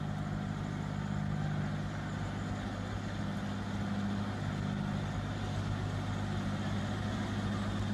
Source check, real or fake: real